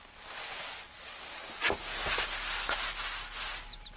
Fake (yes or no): no